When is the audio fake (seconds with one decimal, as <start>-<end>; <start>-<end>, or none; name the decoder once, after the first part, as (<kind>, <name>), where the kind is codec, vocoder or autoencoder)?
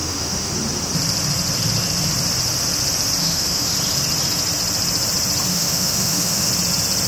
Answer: 0.0-0.5 (autoencoder, DAC-VAE); 3.2-3.7; 5.5-6.5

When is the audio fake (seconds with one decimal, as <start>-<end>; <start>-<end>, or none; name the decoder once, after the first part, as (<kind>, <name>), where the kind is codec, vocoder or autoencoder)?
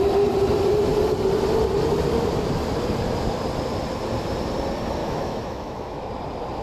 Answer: 5.0-6.1 (autoencoder, DAC-VAE)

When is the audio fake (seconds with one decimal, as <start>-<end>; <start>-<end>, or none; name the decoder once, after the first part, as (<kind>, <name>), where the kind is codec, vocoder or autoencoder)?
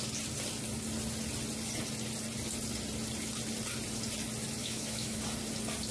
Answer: 4.6-5.2 (autoencoder, DAC-VAE)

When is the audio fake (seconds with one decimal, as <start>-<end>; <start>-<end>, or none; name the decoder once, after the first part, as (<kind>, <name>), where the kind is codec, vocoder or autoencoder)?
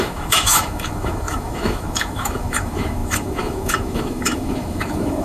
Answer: 0.0-5.2 (autoencoder, DAC-VAE)